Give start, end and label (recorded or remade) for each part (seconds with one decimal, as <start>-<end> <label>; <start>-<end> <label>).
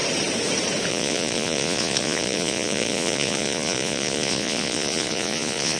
0.0-0.9 recorded; 0.9-5.8 remade